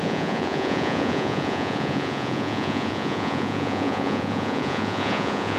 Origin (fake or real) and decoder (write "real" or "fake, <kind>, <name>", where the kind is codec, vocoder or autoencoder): fake, vocoder, Vocos